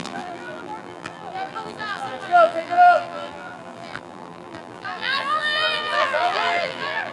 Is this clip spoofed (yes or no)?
yes